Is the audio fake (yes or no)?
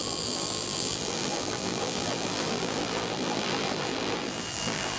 yes